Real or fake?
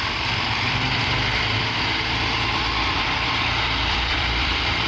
fake